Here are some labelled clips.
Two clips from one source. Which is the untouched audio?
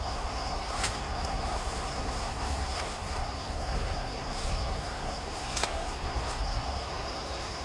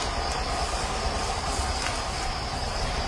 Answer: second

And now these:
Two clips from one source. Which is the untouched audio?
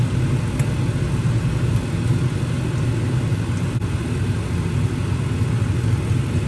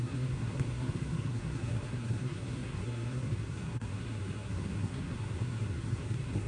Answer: first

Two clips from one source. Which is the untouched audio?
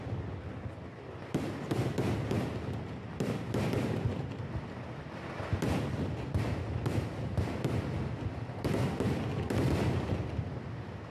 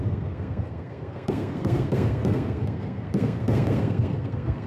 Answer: first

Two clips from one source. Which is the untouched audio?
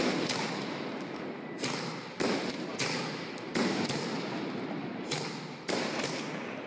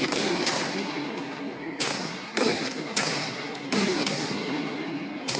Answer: first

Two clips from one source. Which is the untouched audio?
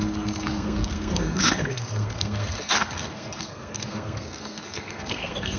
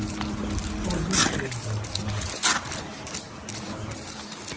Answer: second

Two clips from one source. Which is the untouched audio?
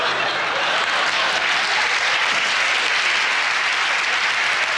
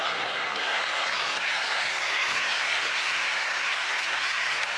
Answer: first